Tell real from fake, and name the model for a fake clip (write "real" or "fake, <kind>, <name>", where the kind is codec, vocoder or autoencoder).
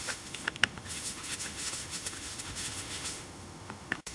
fake, autoencoder, DAC-VAE